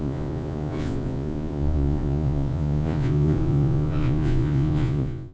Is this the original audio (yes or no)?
no